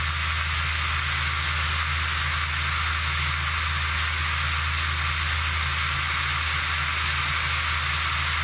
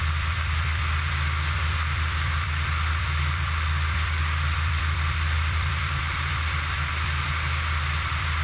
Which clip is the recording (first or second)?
first